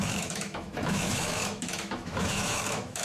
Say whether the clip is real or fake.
fake